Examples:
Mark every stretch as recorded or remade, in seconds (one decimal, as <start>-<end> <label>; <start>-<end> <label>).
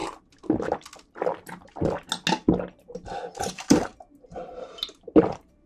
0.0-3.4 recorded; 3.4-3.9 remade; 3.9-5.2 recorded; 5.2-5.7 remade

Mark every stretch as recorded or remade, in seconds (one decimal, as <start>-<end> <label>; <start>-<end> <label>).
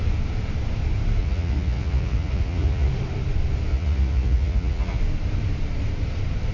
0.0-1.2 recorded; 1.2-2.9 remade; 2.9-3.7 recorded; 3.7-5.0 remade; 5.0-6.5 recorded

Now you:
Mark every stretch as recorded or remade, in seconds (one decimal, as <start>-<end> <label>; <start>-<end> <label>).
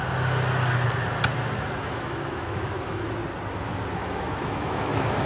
0.0-1.8 recorded; 1.8-3.1 remade; 3.1-4.0 recorded; 4.0-5.3 remade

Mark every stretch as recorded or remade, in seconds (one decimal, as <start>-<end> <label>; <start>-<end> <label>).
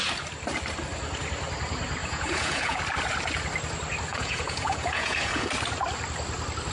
0.0-2.0 recorded; 2.0-2.8 remade; 2.8-4.1 recorded; 4.1-5.5 remade; 5.5-6.7 recorded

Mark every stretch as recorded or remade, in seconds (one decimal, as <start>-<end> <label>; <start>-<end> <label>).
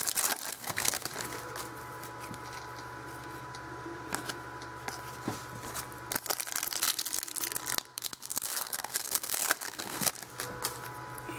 0.0-0.5 recorded; 0.5-1.1 remade; 1.1-7.9 recorded; 7.9-10.1 remade; 10.1-11.4 recorded